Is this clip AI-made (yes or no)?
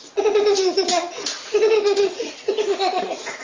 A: yes